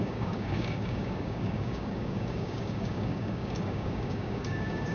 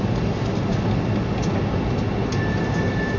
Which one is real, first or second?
second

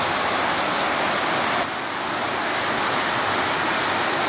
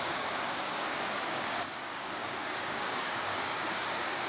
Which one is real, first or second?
first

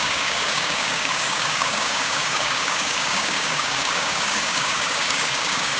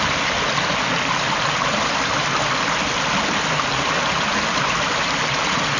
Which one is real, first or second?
second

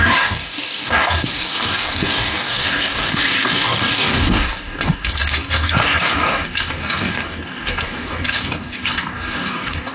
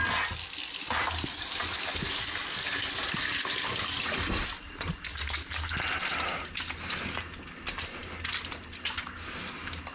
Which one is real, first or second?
second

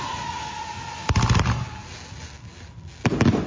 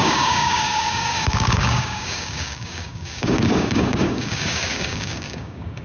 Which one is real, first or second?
first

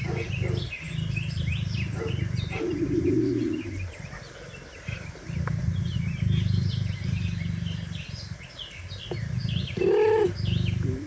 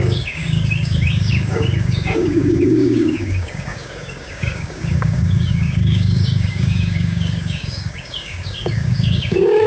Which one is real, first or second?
first